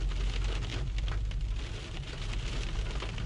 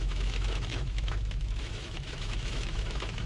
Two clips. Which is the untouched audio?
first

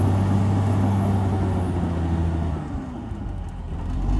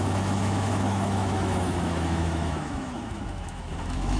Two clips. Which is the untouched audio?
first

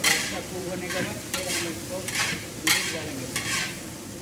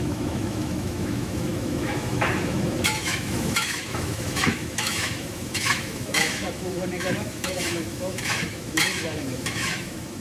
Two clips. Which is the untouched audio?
first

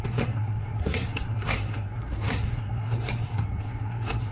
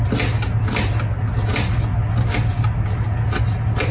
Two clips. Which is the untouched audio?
second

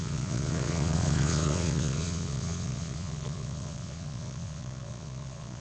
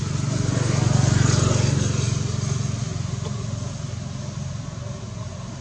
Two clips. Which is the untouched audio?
second